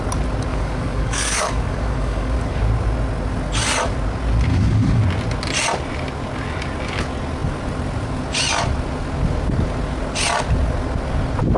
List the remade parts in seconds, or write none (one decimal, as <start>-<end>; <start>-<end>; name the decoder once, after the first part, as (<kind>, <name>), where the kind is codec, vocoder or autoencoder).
0.5-2.6 (codec, DAC); 4.5-5.0